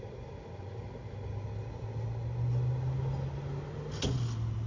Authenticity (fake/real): real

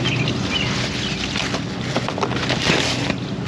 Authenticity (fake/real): real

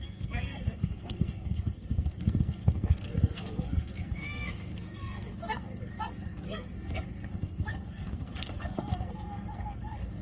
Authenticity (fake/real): fake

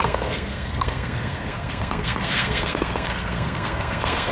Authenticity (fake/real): fake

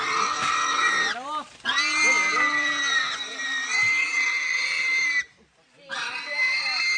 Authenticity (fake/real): real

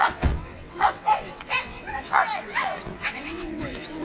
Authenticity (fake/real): fake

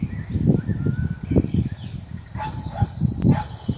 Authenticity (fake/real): real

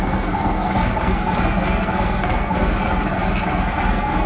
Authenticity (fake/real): fake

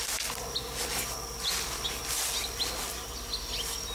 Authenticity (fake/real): real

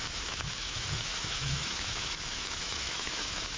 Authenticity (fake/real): fake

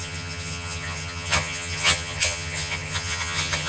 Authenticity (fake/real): fake